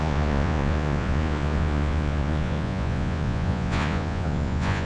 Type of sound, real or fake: fake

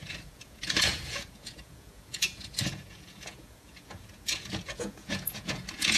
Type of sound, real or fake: fake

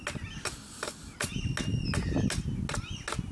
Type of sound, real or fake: real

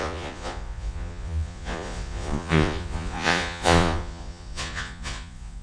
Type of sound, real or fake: fake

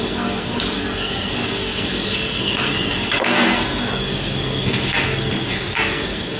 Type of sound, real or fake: fake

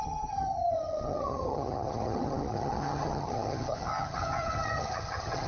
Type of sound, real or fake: fake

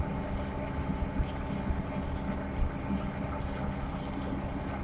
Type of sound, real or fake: real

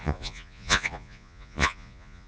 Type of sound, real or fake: fake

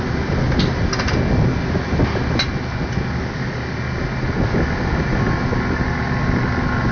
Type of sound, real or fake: real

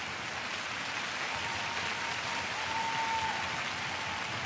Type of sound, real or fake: real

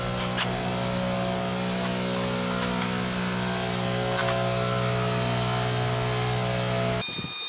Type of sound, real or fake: real